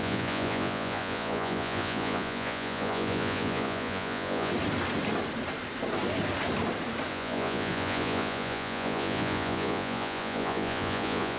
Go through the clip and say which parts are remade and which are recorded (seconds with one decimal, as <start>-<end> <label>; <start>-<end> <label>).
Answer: 0.0-4.5 remade; 4.5-7.1 recorded; 7.1-11.4 remade